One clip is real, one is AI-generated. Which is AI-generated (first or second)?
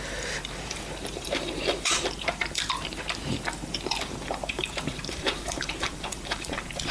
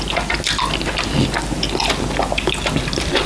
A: first